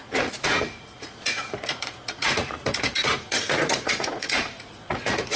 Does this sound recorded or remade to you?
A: remade